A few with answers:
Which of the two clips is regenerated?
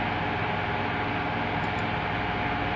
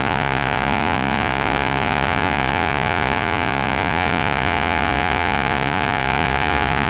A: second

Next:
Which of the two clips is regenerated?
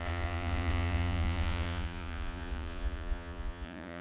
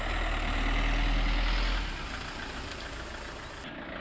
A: first